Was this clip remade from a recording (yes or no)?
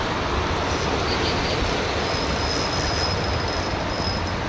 no